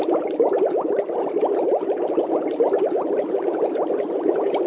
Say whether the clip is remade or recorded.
recorded